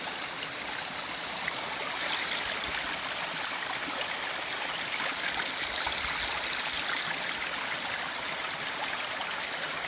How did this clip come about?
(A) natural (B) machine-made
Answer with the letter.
A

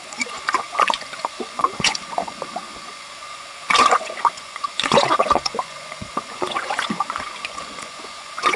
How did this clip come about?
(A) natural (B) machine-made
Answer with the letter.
B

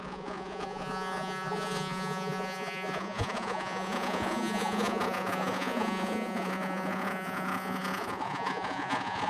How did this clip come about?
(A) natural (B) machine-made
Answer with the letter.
B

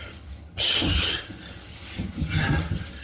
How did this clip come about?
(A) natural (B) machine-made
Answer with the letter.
B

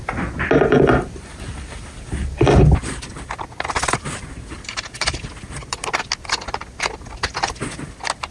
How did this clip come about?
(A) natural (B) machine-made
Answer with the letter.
A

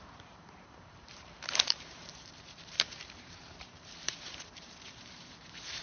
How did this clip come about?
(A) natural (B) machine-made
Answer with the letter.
B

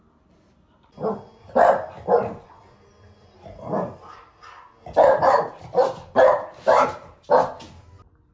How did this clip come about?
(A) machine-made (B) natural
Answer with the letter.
B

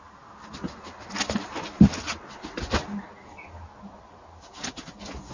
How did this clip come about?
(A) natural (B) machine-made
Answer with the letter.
A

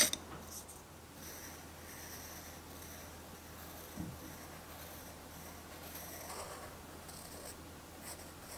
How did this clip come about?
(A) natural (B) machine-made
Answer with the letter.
A